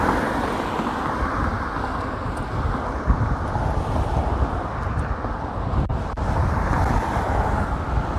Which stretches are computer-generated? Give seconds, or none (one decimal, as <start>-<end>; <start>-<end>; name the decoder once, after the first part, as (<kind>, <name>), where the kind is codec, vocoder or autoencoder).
none